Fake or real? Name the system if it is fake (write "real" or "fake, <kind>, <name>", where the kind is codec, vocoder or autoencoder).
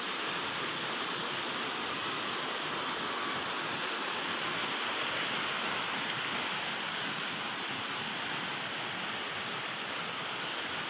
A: real